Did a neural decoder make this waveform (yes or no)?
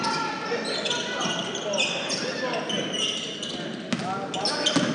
no